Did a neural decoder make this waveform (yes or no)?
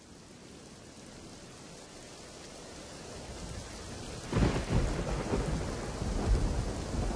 no